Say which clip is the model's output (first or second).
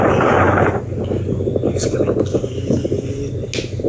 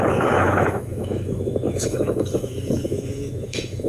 second